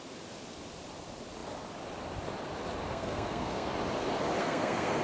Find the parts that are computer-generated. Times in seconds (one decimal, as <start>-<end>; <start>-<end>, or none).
2.9-3.7; 4.4-5.0